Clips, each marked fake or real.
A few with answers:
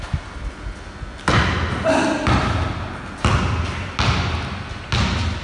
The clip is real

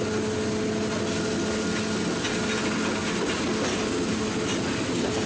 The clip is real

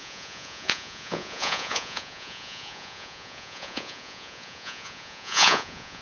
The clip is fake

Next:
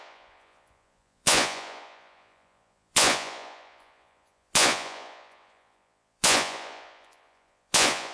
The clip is fake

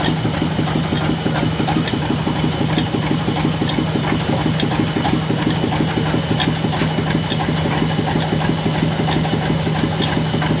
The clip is real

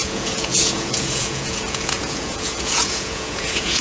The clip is fake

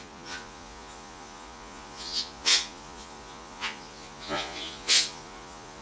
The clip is fake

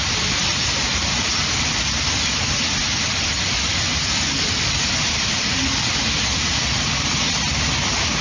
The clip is real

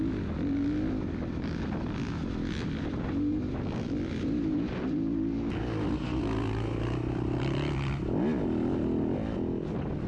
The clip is real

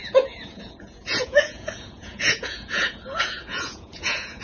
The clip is fake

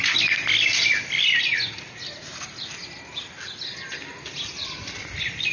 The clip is real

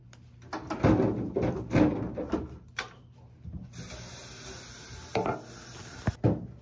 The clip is real